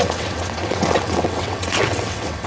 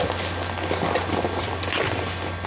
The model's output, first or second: first